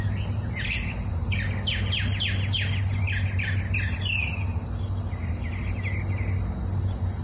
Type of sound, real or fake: real